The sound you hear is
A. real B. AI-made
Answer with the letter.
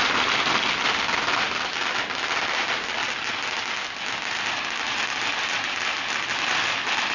A